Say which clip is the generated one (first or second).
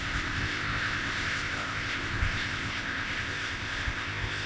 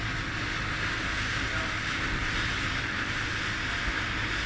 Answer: first